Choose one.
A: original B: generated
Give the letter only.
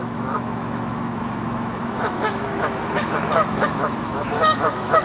B